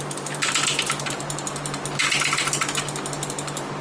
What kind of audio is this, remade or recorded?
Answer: recorded